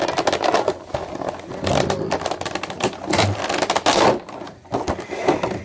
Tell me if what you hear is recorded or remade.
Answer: recorded